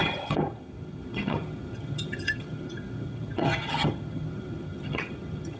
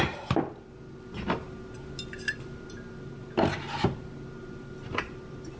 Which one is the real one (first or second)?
second